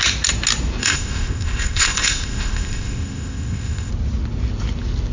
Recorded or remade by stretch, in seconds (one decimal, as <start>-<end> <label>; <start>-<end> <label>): 0.0-0.8 recorded; 0.8-3.9 remade; 3.9-5.1 recorded